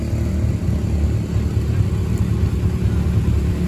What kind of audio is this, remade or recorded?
recorded